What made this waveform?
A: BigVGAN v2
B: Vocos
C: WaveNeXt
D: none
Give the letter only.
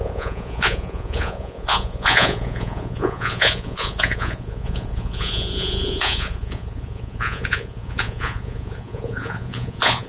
B